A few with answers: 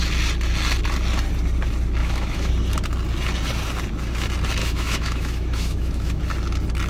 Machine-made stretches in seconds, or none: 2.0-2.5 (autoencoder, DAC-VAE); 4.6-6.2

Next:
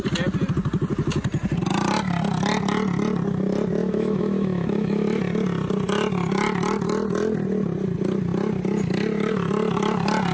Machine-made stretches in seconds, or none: 3.8-5.2 (autoencoder, DAC-VAE)

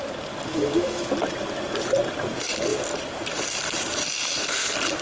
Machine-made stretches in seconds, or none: 0.5-1.1 (autoencoder, DAC-VAE)

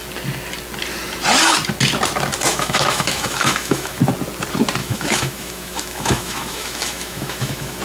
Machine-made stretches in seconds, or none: 2.5-4.0 (autoencoder, DAC-VAE); 4.8-7.8

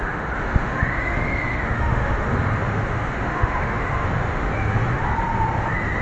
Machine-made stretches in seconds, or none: 0.0-4.5 (autoencoder, DAC-VAE)